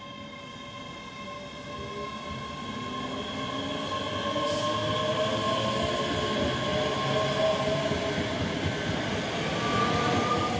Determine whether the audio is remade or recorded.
recorded